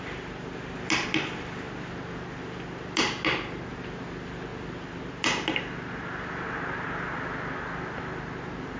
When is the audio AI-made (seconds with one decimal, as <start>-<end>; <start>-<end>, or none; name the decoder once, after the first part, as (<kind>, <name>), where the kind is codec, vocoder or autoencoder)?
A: none